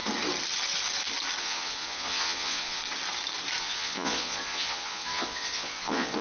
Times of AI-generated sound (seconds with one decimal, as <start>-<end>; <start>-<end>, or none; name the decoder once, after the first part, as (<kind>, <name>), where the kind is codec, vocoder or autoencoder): 1.4-2.8 (vocoder, Vocos); 3.6-6.2